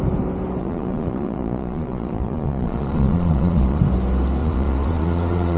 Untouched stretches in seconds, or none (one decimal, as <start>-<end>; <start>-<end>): 0.0-0.6; 3.8-4.4